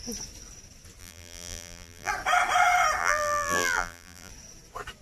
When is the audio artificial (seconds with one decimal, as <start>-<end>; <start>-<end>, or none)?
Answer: 1.0-2.1; 3.0-4.3